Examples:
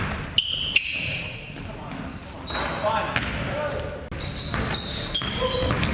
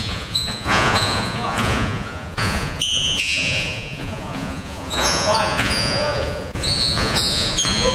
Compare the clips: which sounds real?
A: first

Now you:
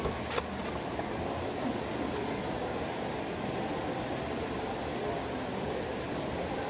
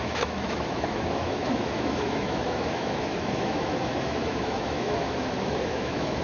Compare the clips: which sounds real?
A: first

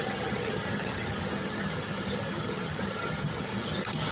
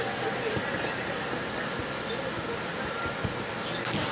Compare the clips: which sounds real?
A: second